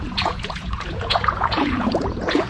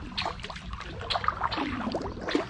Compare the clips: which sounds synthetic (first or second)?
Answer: first